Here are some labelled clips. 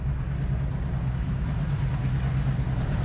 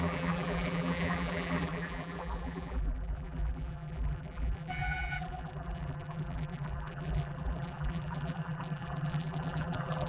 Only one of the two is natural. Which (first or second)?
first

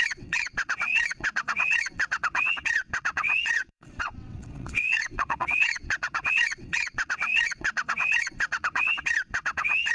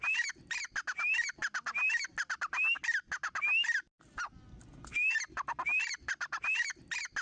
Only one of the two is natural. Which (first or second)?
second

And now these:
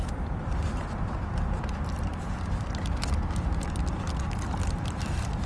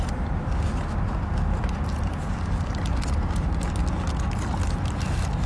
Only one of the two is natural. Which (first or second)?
second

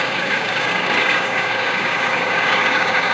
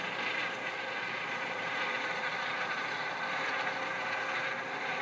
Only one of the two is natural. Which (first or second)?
second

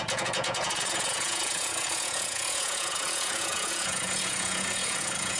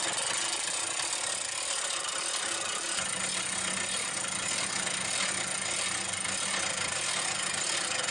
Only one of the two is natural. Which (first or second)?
second